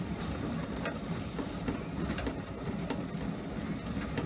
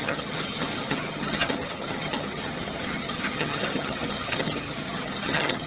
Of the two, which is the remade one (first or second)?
second